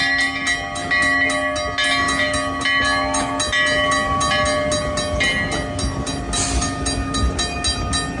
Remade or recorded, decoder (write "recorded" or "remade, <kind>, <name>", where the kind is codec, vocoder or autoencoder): recorded